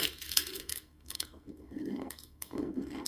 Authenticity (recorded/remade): remade